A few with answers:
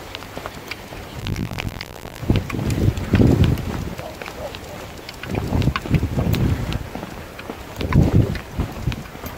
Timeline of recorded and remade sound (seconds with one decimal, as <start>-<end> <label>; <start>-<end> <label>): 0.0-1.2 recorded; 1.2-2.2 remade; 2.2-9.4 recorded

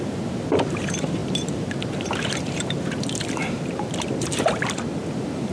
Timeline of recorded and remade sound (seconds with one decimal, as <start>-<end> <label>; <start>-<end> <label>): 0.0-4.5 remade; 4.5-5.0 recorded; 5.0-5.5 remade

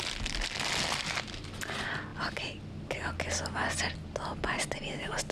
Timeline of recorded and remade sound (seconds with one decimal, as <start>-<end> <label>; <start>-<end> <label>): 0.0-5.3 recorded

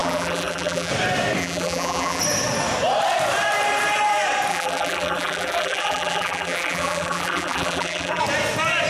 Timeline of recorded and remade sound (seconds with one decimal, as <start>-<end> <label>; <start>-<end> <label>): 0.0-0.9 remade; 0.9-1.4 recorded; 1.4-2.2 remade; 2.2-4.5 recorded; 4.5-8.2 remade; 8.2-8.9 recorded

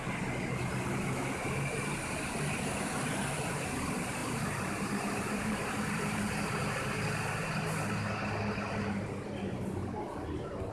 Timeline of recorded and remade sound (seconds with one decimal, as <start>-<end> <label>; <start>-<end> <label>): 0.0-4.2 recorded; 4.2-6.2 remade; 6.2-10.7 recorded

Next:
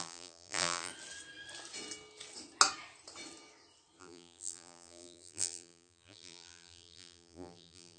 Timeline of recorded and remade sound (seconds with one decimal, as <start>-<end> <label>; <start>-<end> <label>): 0.0-0.9 remade; 0.9-4.0 recorded; 4.0-8.0 remade

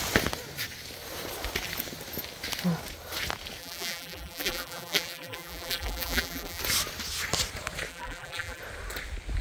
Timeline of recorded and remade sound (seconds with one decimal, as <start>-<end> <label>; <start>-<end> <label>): 0.0-3.6 recorded; 3.6-6.6 remade; 6.6-7.9 recorded; 7.9-8.6 remade; 8.6-9.4 recorded

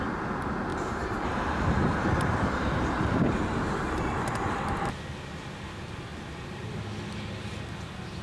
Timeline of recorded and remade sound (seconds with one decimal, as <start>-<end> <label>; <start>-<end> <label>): 0.0-0.7 recorded; 0.7-4.8 remade; 4.8-6.1 recorded; 6.1-6.7 remade; 6.7-8.2 recorded